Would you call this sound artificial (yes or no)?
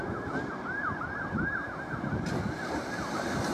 no